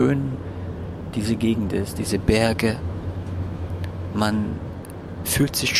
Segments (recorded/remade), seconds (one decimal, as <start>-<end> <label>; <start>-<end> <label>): 0.0-1.9 recorded; 1.9-4.5 remade; 4.5-5.8 recorded